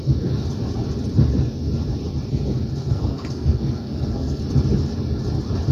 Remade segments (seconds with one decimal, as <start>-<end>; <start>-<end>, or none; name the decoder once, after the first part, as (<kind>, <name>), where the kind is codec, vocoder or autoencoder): 2.8-4.4 (codec, SNAC)